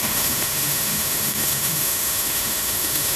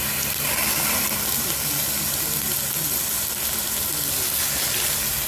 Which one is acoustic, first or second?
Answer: second